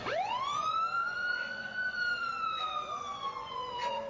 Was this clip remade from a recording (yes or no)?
yes